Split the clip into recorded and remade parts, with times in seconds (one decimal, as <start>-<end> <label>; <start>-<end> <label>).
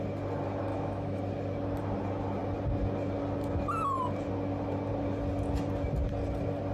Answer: 0.0-0.7 recorded; 0.7-1.2 remade; 1.2-6.7 recorded